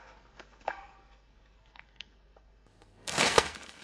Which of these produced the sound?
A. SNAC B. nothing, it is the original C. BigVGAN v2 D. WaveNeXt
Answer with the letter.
A